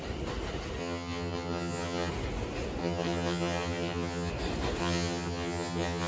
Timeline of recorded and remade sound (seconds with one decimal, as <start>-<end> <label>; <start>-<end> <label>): 0.0-0.8 recorded; 0.8-2.1 remade; 2.1-2.8 recorded; 2.8-4.3 remade; 4.3-4.8 recorded; 4.8-6.1 remade